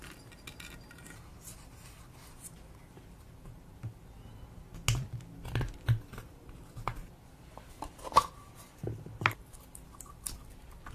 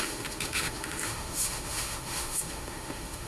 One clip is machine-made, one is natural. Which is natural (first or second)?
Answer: first